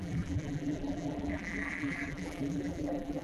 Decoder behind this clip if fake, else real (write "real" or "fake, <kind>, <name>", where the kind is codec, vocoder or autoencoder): fake, vocoder, BigVGAN v2